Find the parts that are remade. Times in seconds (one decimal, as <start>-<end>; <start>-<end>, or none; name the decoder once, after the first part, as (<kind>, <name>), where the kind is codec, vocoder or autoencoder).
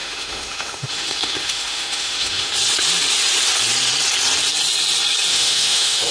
0.0-2.5 (autoencoder, DAC-VAE); 5.3-6.1